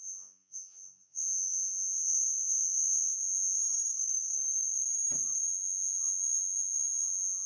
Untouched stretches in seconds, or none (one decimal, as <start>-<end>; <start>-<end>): 3.6-5.5